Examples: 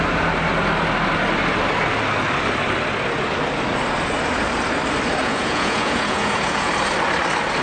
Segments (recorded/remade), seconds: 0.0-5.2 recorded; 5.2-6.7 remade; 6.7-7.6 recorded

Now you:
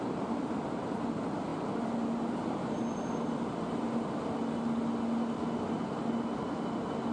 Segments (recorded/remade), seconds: 0.0-7.1 recorded

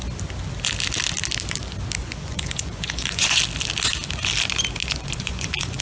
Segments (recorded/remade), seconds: 0.0-2.0 recorded; 2.0-3.4 remade; 3.4-4.8 recorded; 4.8-5.8 remade

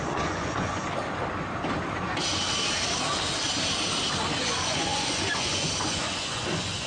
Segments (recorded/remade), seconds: 0.0-0.8 remade; 0.8-4.4 recorded; 4.4-6.9 remade